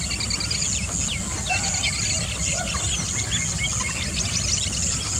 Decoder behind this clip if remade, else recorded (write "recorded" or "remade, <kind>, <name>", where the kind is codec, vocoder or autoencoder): recorded